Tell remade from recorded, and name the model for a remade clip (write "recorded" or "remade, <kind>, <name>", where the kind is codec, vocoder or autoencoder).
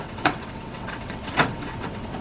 remade, vocoder, WaveNeXt